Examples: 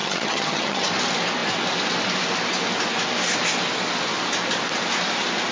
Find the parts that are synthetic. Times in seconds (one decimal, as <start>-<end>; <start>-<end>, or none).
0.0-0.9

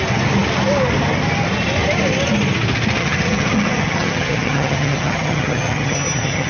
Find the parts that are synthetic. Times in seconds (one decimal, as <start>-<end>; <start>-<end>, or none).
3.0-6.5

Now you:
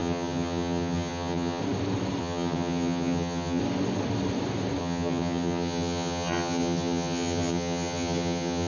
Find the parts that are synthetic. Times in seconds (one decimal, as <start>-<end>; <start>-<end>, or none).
0.0-1.6; 2.2-3.6; 4.8-8.7

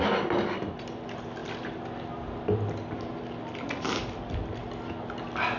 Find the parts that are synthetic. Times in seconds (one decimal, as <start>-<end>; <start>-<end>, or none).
none

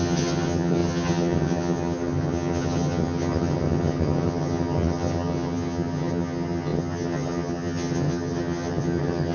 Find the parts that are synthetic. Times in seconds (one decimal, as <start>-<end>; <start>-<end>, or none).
0.0-9.3

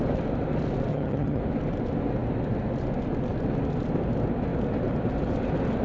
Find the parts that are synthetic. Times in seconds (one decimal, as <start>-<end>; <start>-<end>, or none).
0.9-1.4

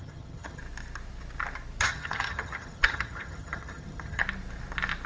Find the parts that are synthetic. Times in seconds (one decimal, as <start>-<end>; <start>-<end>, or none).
0.0-0.6; 1.8-4.2

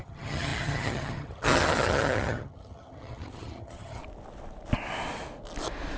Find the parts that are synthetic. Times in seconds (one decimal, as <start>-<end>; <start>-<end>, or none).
0.0-4.0